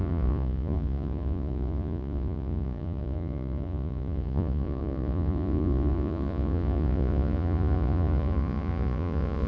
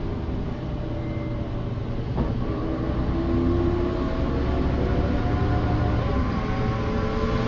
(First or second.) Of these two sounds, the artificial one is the first